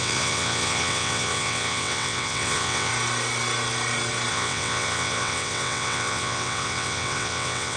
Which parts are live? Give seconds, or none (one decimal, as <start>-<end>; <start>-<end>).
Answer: 2.9-4.3